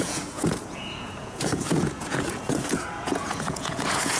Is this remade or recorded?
remade